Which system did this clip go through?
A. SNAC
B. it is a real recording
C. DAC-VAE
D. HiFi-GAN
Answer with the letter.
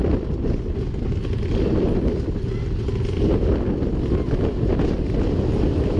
B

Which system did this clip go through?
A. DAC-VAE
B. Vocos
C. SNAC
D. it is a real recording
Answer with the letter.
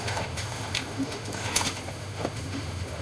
A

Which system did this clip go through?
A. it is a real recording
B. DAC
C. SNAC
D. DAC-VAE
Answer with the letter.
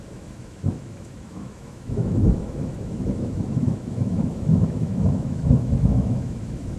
D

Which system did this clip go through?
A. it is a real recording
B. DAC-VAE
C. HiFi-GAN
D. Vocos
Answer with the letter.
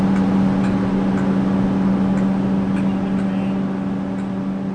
A